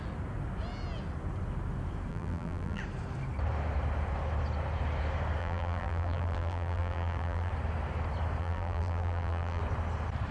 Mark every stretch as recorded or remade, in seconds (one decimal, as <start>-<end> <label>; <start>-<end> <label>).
0.0-2.1 recorded; 2.1-2.8 remade; 2.8-5.4 recorded; 5.4-7.5 remade; 7.5-8.4 recorded; 8.4-9.6 remade; 9.6-10.3 recorded